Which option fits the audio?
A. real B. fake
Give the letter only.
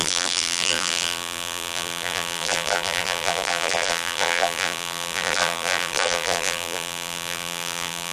B